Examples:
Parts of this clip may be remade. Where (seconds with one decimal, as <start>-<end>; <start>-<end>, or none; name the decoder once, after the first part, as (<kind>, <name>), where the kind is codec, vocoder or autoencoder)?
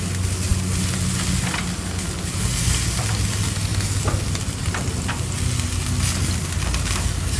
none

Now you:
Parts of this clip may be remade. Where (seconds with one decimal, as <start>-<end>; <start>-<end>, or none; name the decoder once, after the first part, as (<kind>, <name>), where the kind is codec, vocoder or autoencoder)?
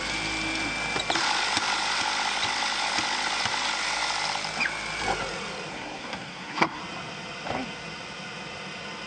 5.7-6.8 (codec, SNAC)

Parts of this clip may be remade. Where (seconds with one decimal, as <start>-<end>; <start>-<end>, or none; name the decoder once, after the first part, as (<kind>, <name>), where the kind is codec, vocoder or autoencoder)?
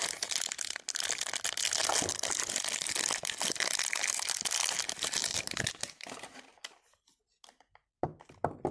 5.2-6.6 (vocoder, BigVGAN v2)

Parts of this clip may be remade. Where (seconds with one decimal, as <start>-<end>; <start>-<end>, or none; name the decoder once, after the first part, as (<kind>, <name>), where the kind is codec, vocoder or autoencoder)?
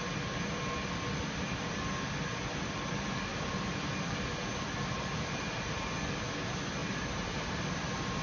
3.3-5.9 (vocoder, BigVGAN v2); 6.8-7.6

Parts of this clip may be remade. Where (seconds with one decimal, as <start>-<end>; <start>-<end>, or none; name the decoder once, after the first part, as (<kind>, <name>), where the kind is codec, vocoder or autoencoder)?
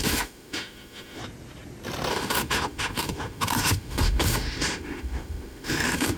0.0-1.2 (autoencoder, DAC-VAE); 2.1-6.2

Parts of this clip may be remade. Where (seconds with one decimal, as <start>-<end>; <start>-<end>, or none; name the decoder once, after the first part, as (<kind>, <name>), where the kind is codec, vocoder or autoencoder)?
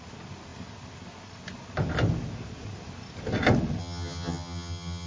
3.8-5.1 (vocoder, HiFi-GAN)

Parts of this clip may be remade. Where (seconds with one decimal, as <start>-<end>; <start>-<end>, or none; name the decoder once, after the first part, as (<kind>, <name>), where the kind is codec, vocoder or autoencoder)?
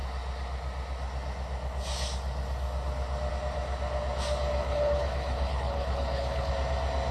4.6-6.5 (codec, HILCodec)